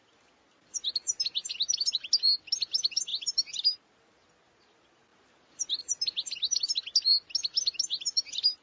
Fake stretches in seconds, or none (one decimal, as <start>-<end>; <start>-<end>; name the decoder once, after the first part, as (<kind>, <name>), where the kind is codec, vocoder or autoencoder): none